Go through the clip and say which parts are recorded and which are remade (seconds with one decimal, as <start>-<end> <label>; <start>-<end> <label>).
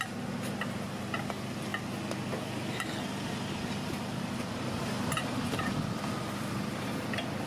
0.0-7.5 recorded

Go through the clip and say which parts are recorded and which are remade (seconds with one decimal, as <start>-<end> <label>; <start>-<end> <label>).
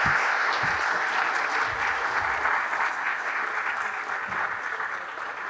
0.0-0.7 remade; 0.7-2.9 recorded; 2.9-3.4 remade; 3.4-5.5 recorded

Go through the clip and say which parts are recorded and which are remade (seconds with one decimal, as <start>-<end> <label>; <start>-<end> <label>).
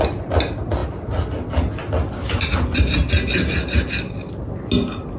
0.0-5.2 recorded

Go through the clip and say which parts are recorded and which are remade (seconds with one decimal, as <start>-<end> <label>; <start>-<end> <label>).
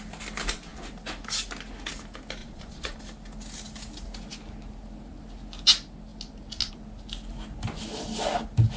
0.0-2.4 recorded; 2.4-3.0 remade; 3.0-8.8 recorded